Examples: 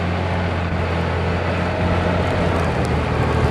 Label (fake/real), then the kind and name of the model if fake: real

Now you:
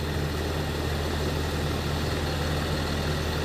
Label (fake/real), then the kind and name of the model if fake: real